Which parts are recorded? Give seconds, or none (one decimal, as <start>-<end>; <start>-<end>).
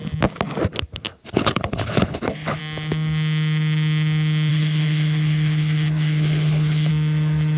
0.0-1.1; 2.6-4.5; 6.9-7.6